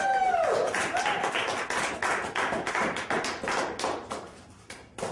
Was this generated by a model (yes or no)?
no